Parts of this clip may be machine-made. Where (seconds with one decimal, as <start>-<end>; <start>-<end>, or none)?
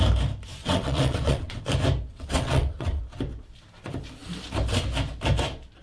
0.6-1.6; 2.1-3.0